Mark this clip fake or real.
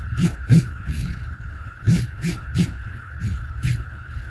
fake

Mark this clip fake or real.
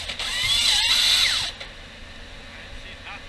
real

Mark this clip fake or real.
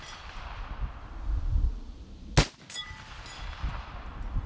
real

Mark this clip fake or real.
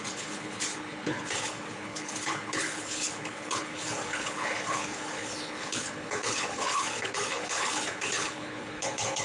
fake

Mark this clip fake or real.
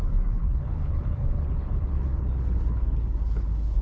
fake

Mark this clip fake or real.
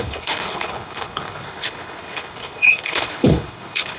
fake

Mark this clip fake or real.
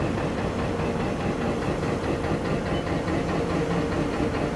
real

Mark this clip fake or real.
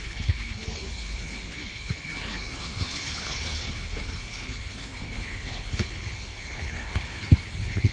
fake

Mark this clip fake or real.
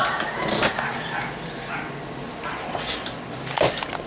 real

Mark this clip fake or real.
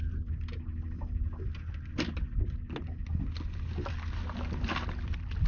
real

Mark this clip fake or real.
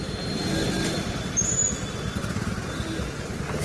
real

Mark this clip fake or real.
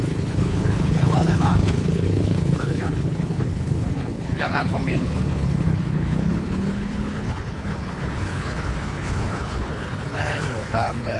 fake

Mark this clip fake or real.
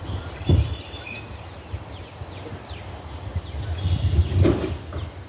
real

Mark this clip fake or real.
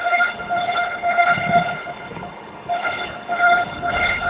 fake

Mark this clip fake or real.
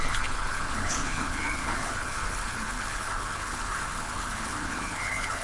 fake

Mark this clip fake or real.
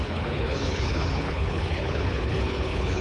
fake